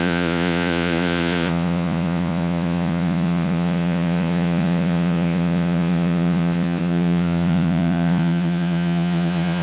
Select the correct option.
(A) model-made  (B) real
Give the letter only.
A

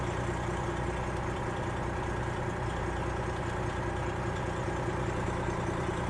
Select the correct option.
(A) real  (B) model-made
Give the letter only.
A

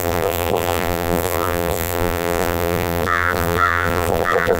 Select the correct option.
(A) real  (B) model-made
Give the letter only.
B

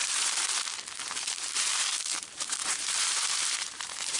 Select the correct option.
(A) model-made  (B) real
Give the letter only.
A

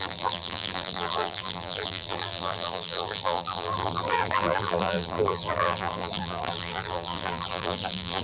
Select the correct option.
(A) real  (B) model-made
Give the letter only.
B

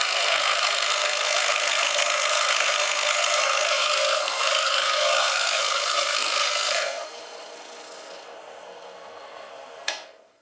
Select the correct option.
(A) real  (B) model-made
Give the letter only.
B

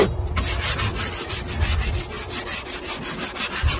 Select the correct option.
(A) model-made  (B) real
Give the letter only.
B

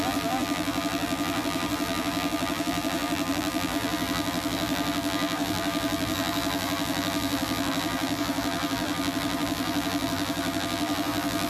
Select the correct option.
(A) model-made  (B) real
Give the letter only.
A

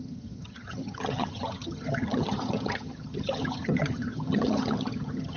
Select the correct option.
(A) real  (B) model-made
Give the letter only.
B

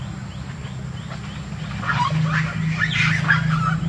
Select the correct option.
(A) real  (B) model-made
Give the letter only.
A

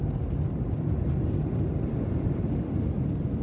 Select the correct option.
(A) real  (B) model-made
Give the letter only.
A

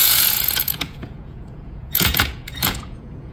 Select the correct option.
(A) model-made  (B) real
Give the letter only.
A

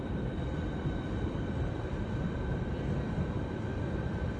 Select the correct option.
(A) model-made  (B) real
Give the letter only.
A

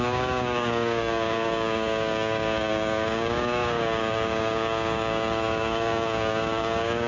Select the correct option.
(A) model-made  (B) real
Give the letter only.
A